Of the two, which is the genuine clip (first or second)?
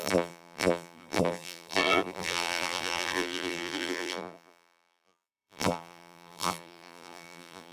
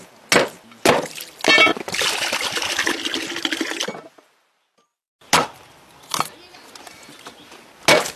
second